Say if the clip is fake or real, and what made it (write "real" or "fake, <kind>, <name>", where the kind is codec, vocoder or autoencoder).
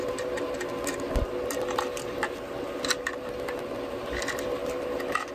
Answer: real